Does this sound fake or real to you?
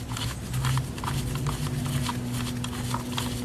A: real